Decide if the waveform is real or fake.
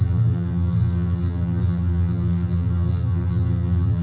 fake